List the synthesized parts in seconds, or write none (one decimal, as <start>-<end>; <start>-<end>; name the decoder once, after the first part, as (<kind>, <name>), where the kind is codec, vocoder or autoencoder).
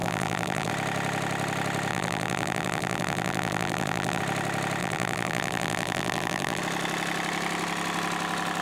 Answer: 0.0-0.7 (vocoder, BigVGAN v2); 1.9-4.2; 4.8-6.6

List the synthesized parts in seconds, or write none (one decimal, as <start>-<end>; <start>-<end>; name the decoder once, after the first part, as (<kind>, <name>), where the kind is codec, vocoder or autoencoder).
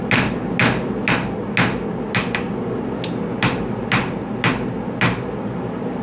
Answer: none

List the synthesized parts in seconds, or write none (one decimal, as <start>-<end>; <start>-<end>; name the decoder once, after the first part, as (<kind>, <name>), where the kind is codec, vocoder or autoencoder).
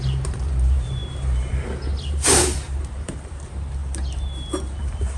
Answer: 0.0-3.8 (vocoder, BigVGAN v2); 4.8-5.2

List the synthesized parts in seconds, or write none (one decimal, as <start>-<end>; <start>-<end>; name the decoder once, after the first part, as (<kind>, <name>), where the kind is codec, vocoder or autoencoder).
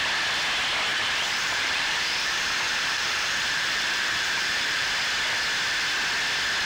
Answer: 0.9-4.9 (vocoder, BigVGAN v2)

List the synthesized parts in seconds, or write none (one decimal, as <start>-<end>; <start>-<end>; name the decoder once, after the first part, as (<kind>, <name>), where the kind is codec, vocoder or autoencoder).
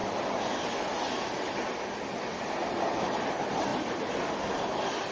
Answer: none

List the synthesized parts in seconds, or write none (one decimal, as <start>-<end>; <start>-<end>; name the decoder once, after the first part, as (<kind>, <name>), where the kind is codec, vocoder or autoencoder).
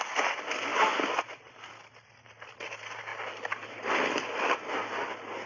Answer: none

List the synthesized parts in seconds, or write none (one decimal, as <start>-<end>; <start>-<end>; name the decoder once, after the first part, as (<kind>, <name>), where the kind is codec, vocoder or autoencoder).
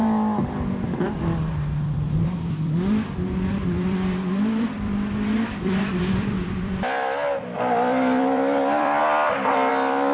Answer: 2.1-10.1 (vocoder, BigVGAN v2)